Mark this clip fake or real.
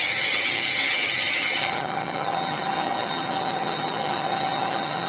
fake